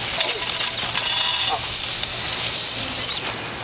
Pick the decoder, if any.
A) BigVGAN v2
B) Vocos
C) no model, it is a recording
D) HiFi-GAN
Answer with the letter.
C